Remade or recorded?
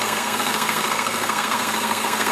remade